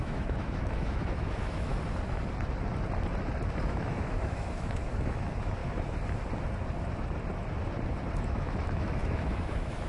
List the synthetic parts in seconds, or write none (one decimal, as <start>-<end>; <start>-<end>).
0.0-1.7; 3.7-5.6; 8.2-9.9